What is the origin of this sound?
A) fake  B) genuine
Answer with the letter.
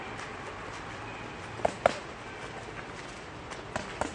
B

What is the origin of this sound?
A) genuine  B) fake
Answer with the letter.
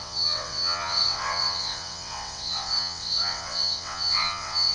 B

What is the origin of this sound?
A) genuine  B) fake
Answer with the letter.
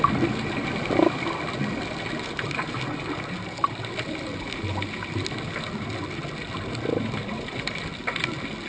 A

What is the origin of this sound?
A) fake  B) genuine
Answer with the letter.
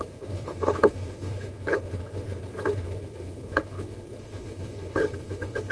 A